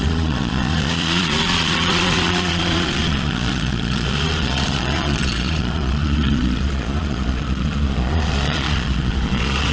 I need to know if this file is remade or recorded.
remade